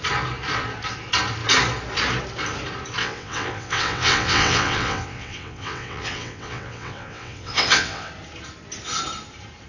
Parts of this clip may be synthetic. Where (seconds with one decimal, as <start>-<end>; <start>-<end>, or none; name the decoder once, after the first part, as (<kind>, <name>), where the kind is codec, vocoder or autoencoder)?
3.0-8.1 (vocoder, WaveNeXt)